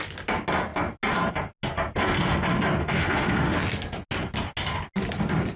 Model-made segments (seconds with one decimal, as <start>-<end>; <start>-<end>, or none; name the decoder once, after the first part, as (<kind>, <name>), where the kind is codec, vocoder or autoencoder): 2.8-3.6 (autoencoder, DAC-VAE)